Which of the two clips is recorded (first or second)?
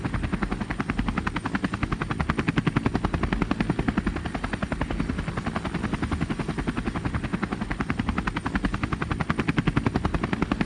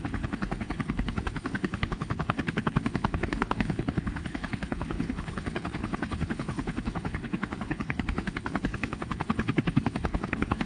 first